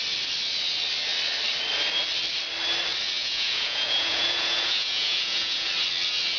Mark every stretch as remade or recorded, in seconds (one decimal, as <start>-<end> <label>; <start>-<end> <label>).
0.0-3.2 recorded; 3.2-5.7 remade; 5.7-6.4 recorded